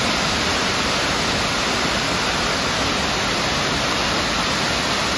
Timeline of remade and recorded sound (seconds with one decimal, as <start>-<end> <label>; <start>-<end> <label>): 0.0-5.2 recorded